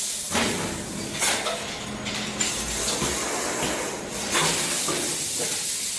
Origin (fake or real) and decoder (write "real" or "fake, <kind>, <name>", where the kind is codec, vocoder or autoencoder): real